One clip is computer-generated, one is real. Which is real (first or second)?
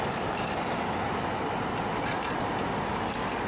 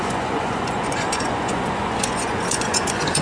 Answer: first